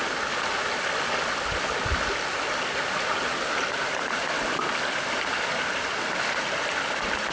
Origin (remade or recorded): recorded